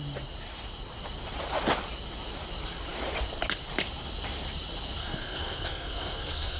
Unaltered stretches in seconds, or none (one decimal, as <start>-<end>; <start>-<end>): 0.0-5.0